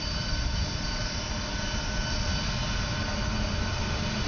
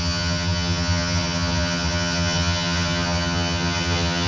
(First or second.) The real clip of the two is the first